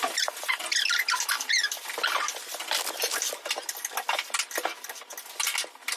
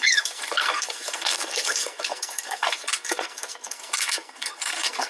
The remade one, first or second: second